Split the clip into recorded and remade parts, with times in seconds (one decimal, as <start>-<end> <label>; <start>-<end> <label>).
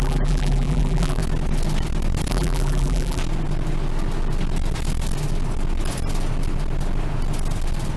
0.0-1.2 remade; 1.2-2.3 recorded; 2.3-3.2 remade; 3.2-8.0 recorded